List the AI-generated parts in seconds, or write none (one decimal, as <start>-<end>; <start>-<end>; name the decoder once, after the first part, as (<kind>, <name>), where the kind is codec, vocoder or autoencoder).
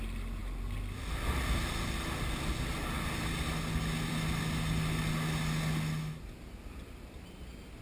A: none